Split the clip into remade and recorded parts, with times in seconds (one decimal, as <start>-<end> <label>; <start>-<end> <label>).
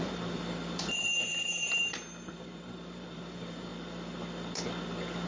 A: 0.0-3.7 remade; 3.7-5.3 recorded